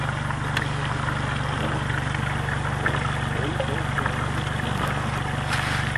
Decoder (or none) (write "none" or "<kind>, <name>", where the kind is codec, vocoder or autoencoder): none